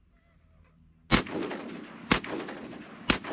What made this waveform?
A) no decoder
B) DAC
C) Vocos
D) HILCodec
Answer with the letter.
A